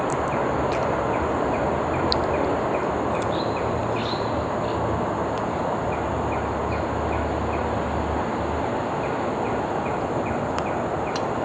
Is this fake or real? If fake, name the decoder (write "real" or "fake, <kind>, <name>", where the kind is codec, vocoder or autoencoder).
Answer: real